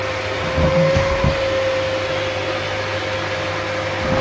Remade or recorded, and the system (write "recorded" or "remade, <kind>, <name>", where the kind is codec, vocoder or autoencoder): recorded